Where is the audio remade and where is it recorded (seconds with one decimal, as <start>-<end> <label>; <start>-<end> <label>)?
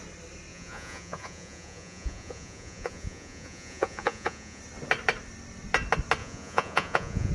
0.0-0.5 recorded; 0.5-4.6 remade; 4.6-6.2 recorded; 6.2-7.3 remade